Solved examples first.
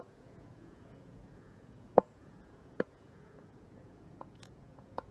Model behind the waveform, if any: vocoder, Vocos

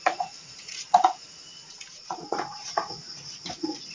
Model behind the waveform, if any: vocoder, Vocos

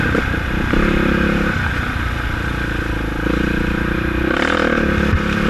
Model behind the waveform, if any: none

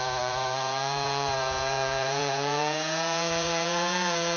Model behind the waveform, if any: vocoder, Vocos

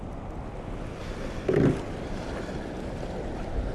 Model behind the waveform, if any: none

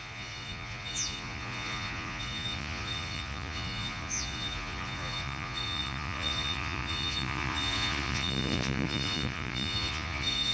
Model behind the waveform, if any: vocoder, Vocos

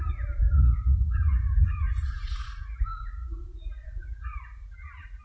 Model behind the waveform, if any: vocoder, Vocos